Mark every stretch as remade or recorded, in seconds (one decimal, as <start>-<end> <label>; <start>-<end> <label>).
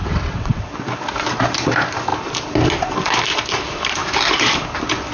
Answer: 0.0-0.7 remade; 0.7-5.1 recorded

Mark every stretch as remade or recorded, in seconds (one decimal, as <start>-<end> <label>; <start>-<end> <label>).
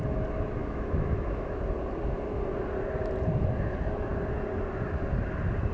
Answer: 0.0-0.6 recorded; 0.6-1.6 remade; 1.6-5.7 recorded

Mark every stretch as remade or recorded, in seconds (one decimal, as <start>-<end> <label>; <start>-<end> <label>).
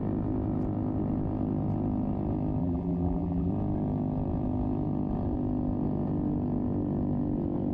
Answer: 0.0-2.6 recorded; 2.6-3.5 remade; 3.5-7.7 recorded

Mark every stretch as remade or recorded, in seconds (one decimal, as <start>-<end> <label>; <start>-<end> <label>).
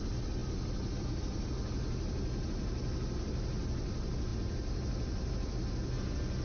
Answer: 0.0-6.4 recorded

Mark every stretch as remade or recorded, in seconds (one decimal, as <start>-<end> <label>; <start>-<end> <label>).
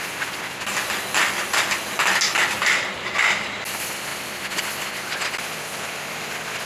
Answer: 0.0-6.7 recorded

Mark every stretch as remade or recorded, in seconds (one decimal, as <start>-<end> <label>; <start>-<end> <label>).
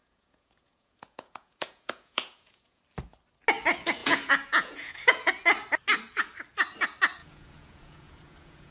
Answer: 0.0-2.8 remade; 2.8-4.0 recorded; 4.0-5.3 remade; 5.3-7.2 recorded; 7.2-8.7 remade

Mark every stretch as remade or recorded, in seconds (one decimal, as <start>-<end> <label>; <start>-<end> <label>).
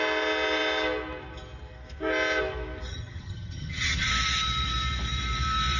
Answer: 0.0-2.9 recorded; 2.9-4.1 remade; 4.1-5.8 recorded